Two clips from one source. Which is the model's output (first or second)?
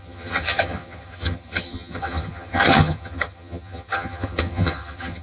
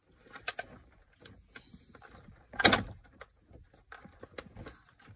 first